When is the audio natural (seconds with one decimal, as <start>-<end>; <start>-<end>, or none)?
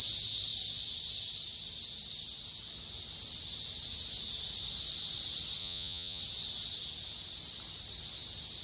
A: 0.0-5.6; 6.2-8.6